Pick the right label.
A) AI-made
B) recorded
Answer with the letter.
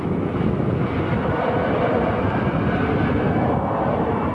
B